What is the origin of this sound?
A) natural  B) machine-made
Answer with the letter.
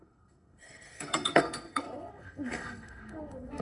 B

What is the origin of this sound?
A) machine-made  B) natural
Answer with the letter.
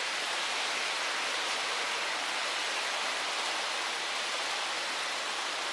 B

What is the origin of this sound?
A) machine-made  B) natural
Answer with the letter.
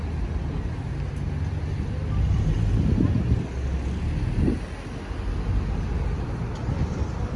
B